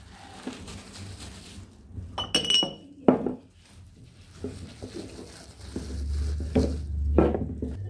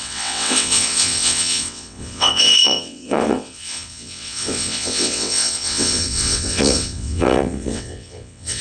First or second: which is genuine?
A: first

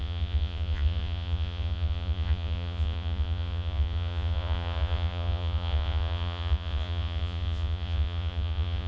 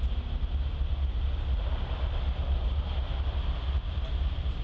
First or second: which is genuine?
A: second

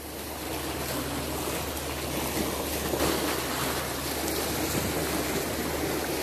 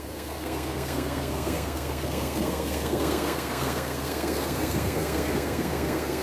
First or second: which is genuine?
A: first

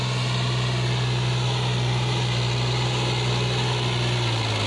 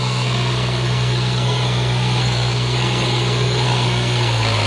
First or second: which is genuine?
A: first